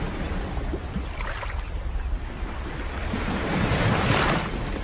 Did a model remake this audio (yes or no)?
no